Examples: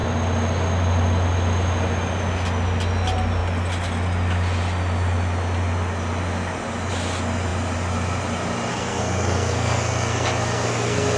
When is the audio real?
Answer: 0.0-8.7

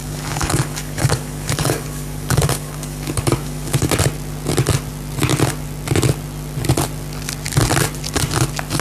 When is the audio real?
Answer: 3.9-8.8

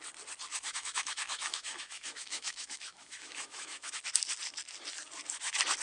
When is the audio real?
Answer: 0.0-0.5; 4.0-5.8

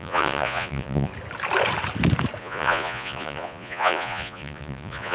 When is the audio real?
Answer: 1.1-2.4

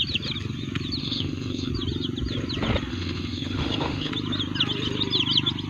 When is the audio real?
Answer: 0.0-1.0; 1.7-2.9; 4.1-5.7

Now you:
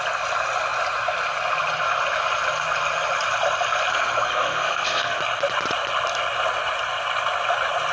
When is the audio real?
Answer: 0.0-3.9; 5.2-7.9